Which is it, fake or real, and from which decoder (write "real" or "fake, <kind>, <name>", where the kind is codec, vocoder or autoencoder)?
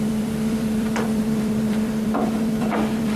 fake, vocoder, BigVGAN v2